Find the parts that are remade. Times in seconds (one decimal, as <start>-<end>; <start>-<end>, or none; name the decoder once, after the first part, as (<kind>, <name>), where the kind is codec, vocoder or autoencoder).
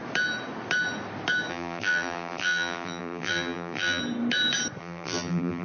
1.5-4.0 (vocoder, BigVGAN v2); 4.8-5.6